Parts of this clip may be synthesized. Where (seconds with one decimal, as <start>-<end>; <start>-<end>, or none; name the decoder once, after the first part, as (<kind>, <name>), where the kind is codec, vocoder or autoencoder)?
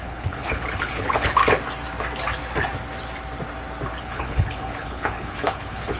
0.0-1.4 (codec, HILCodec); 4.0-6.0